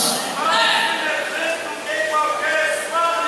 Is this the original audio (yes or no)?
yes